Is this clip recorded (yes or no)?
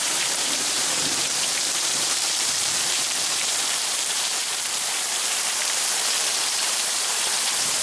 no